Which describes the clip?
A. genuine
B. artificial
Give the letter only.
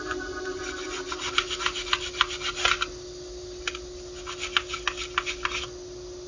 A